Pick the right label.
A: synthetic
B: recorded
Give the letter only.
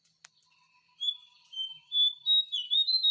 B